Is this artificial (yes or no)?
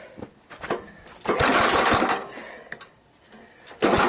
no